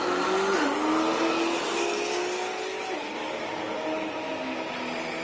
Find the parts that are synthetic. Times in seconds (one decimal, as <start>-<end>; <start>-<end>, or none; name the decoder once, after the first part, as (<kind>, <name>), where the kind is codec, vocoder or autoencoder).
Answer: none